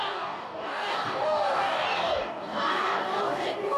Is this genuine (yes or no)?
no